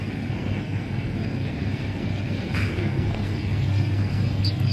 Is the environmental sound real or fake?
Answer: fake